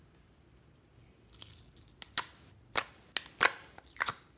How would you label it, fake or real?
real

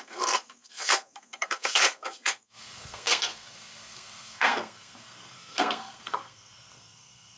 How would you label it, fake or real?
fake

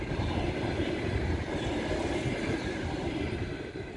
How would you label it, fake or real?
fake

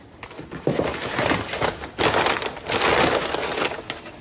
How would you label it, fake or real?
real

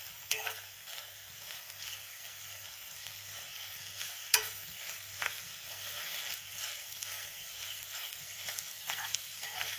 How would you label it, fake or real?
fake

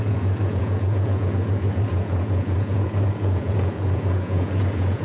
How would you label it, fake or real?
fake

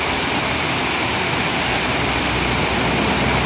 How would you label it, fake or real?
real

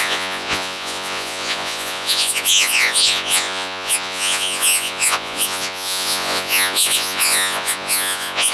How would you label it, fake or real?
fake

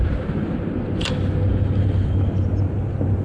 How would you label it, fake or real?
real